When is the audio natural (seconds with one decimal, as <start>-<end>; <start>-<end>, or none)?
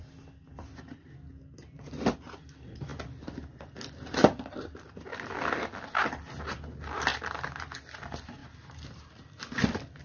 0.0-10.0